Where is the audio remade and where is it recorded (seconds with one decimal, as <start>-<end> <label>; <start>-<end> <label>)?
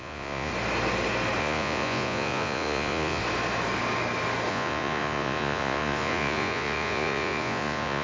0.0-0.5 remade; 0.5-1.4 recorded; 1.4-3.2 remade; 3.2-4.5 recorded; 4.5-8.0 remade